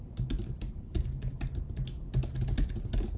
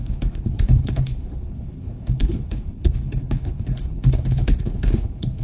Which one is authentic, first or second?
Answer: first